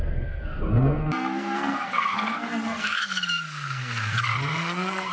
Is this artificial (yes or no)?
yes